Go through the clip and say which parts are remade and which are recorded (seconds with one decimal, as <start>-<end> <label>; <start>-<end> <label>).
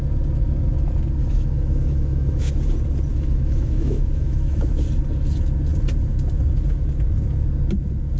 0.0-1.2 recorded; 1.2-2.5 remade; 2.5-3.1 recorded; 3.1-4.7 remade; 4.7-8.2 recorded